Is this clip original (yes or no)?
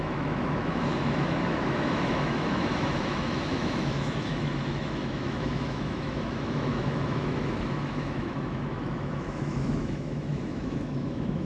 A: no